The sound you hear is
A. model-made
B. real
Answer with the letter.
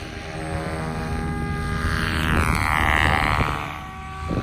B